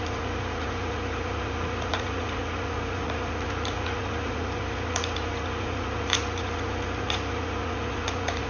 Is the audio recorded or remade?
remade